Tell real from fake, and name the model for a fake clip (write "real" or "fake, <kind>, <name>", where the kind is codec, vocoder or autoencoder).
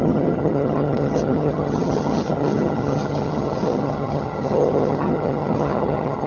fake, vocoder, HiFi-GAN